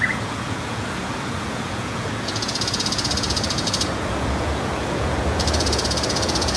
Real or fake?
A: fake